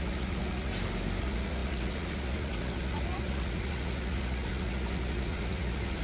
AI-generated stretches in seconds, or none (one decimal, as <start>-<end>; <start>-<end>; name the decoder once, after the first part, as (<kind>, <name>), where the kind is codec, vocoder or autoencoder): 0.0-0.7 (vocoder, Vocos); 1.2-6.0